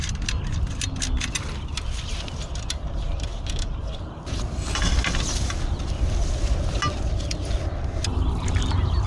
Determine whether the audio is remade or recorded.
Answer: recorded